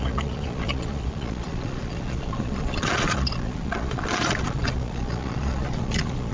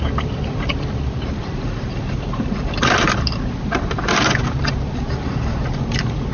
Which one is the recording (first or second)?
second